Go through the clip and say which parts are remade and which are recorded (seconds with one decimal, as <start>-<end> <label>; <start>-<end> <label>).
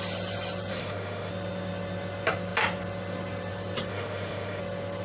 0.0-0.7 recorded; 0.7-1.3 remade; 1.3-3.9 recorded; 3.9-4.6 remade; 4.6-5.0 recorded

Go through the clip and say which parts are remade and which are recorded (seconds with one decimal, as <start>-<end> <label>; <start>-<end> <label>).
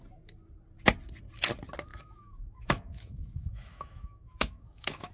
0.0-1.9 recorded; 1.9-5.1 remade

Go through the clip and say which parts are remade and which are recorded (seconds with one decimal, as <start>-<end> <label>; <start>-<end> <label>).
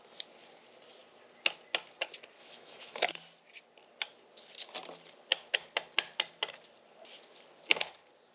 0.0-2.4 recorded; 2.4-3.1 remade; 3.1-8.3 recorded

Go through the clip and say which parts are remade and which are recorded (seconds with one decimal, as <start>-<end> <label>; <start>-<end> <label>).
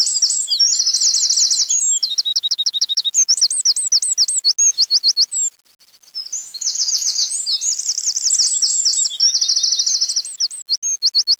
0.0-2.3 recorded; 2.3-3.4 remade; 3.4-6.4 recorded; 6.4-7.3 remade; 7.3-11.4 recorded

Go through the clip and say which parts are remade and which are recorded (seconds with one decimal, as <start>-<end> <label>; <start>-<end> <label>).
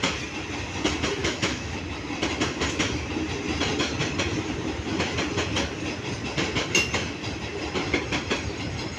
0.0-1.2 recorded; 1.2-1.8 remade; 1.8-9.0 recorded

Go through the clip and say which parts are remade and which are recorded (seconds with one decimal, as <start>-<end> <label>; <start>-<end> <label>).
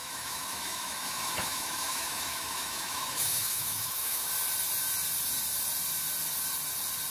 0.0-4.3 remade; 4.3-7.1 recorded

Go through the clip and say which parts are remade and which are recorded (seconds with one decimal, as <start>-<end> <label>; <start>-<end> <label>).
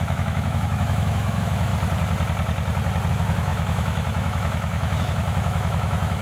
0.0-1.7 remade; 1.7-3.1 recorded; 3.1-6.2 remade